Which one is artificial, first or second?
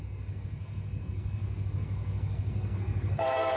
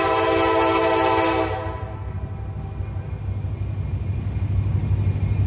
first